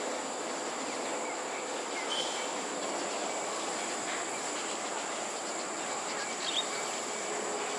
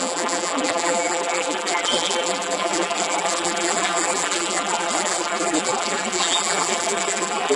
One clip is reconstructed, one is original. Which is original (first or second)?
first